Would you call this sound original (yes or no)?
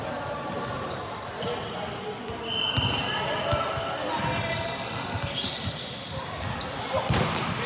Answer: yes